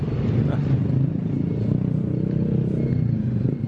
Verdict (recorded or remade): recorded